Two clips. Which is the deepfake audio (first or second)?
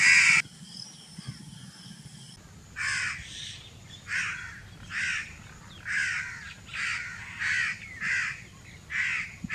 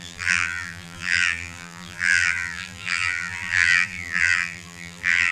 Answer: second